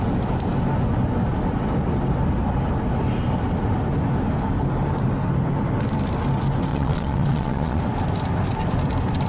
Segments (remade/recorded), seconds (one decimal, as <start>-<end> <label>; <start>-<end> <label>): 0.0-6.7 recorded; 6.7-7.8 remade; 7.8-9.3 recorded

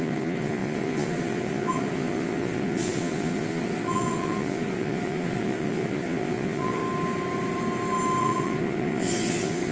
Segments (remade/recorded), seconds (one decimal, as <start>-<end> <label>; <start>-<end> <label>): 0.0-6.8 remade; 6.8-8.2 recorded; 8.2-9.7 remade

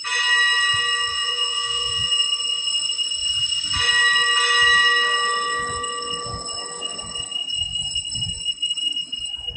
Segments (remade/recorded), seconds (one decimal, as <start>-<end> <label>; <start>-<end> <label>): 0.0-1.1 recorded; 1.1-2.1 remade; 2.1-9.6 recorded

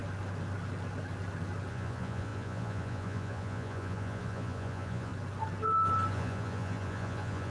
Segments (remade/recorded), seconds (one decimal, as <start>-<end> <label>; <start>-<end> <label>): 0.0-1.7 recorded; 1.7-5.1 remade; 5.1-6.1 recorded; 6.1-7.5 remade

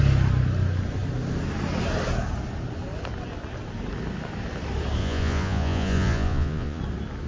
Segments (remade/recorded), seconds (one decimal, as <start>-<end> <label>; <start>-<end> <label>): 0.0-5.0 recorded; 5.0-6.8 remade; 6.8-7.3 recorded

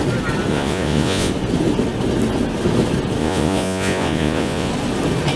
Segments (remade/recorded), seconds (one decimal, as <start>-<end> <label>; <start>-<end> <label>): 0.0-0.5 recorded; 0.5-1.3 remade; 1.3-3.2 recorded; 3.2-4.7 remade; 4.7-5.4 recorded